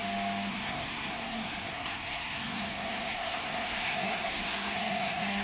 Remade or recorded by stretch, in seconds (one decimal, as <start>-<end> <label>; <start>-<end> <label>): 0.0-0.5 recorded; 0.5-5.4 remade